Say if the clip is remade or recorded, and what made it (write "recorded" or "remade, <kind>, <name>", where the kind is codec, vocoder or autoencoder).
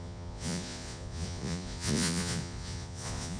remade, vocoder, Vocos